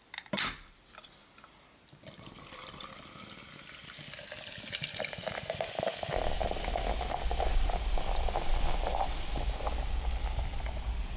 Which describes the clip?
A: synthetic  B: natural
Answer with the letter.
B